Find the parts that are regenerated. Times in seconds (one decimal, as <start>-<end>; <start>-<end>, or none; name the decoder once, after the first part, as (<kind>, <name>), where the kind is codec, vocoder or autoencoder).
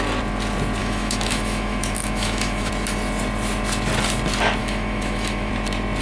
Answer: 0.8-2.7 (autoencoder, DAC-VAE); 4.6-5.5